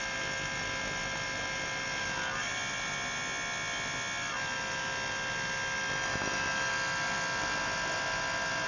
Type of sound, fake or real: real